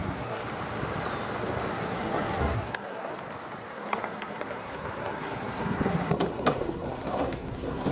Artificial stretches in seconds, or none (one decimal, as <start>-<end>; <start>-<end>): 0.0-0.4; 1.7-3.1; 3.7-7.9